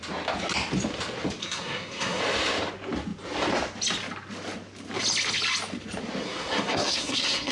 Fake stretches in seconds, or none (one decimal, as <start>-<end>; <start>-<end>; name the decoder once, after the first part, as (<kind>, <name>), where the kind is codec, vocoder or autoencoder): 1.4-2.2 (codec, SNAC); 6.2-7.5